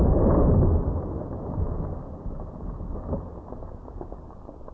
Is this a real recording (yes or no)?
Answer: yes